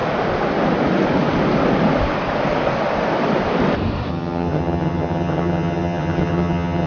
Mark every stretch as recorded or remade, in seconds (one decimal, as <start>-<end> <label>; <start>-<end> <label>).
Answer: 0.0-4.1 recorded; 4.1-6.9 remade